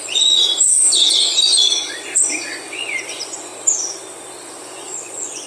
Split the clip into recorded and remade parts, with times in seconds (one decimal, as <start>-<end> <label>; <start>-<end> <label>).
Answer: 0.0-3.5 remade; 3.5-4.6 recorded; 4.6-5.5 remade